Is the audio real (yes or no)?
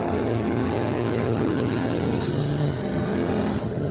no